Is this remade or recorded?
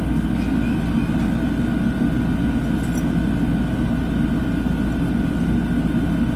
recorded